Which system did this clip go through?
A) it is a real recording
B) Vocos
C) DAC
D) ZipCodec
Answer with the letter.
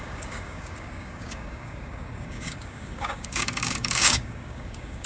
C